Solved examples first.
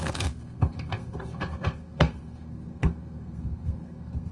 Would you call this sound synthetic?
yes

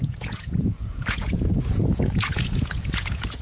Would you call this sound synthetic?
yes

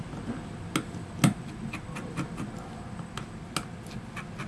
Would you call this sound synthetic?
no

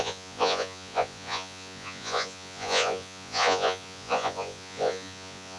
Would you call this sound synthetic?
yes